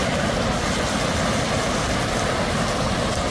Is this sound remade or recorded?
recorded